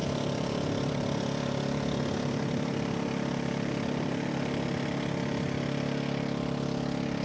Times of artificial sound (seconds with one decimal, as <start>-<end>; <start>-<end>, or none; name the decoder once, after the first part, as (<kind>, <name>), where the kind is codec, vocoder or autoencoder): 0.0-4.3 (vocoder, BigVGAN v2)